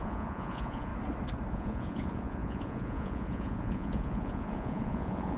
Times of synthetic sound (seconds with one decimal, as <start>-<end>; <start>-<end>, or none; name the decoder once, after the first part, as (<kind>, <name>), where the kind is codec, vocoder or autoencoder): 0.0-0.9 (vocoder, Vocos); 1.5-5.4